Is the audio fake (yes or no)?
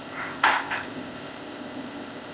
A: yes